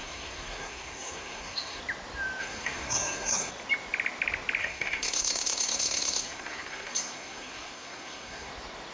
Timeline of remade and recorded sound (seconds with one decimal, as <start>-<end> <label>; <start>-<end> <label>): 0.0-1.8 remade; 1.8-2.4 recorded; 2.4-3.5 remade; 3.5-4.6 recorded; 4.6-8.5 remade; 8.5-8.9 recorded